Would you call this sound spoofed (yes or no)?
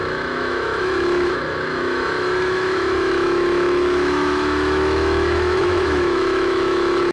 yes